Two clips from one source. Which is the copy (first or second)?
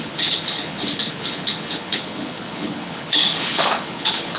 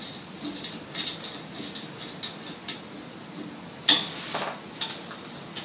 first